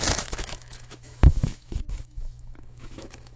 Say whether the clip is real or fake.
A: fake